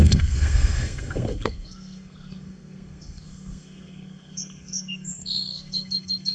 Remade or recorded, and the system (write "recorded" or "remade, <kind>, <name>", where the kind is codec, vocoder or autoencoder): remade, codec, SNAC